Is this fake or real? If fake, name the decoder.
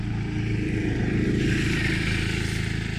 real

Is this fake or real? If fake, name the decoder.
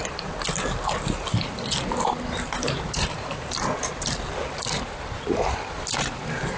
real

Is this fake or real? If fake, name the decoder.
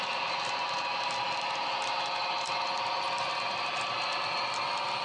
real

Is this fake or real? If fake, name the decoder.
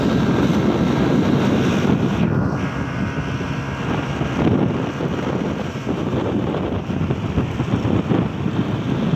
real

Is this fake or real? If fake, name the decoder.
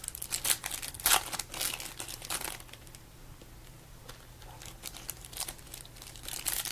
real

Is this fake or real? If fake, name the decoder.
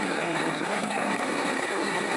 fake, codec, SNAC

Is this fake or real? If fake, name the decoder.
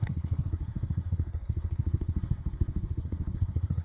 fake, codec, SNAC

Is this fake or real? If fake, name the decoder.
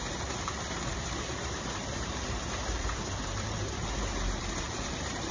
fake, vocoder, BigVGAN v2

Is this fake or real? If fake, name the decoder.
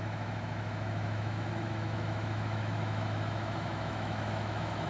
fake, autoencoder, DAC-VAE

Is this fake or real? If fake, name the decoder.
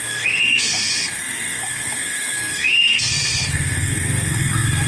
fake, codec, SNAC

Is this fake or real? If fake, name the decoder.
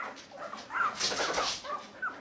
real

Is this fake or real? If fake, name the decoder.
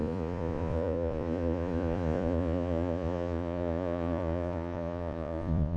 fake, vocoder, Vocos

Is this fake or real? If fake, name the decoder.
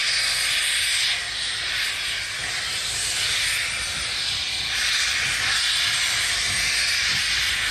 real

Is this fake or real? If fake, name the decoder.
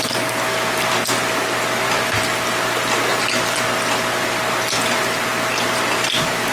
real